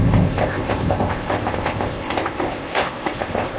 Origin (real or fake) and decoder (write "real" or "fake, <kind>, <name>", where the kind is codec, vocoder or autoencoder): fake, codec, ZipCodec